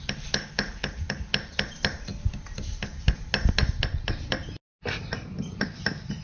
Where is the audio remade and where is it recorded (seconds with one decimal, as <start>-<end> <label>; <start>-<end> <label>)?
0.0-6.2 recorded